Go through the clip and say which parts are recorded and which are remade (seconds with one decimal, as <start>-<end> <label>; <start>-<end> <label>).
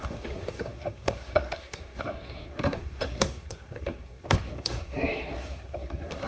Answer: 0.0-6.3 remade